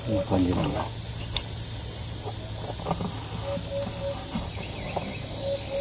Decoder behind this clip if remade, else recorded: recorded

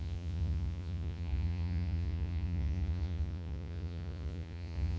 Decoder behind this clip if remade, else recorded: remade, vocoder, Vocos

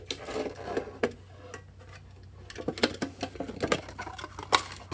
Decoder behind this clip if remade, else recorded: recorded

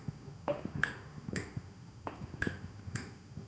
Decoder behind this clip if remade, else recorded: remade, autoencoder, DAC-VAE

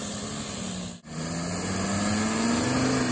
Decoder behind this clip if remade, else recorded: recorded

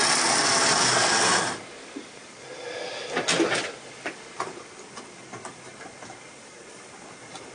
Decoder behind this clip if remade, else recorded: recorded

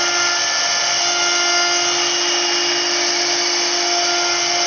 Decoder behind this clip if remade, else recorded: recorded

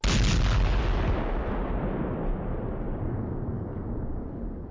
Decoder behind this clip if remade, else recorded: recorded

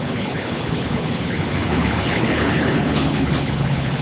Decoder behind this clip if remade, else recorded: remade, codec, HILCodec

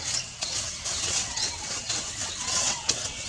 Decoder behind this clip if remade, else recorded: remade, vocoder, WaveNeXt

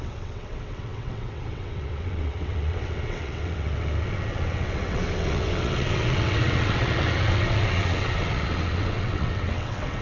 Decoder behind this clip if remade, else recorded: remade, vocoder, WaveNeXt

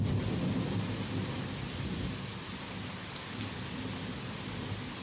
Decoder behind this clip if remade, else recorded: recorded